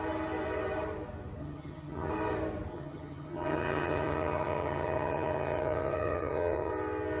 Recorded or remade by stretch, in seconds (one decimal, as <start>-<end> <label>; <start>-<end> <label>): 0.0-1.4 recorded; 1.4-2.1 remade; 2.1-2.7 recorded; 2.7-6.7 remade; 6.7-7.2 recorded